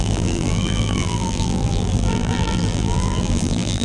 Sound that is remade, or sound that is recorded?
remade